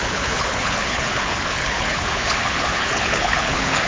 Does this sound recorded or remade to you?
remade